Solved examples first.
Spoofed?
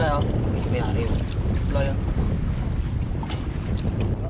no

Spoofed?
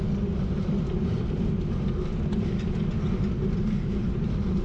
no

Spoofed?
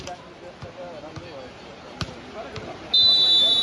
no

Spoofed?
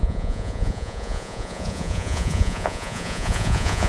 yes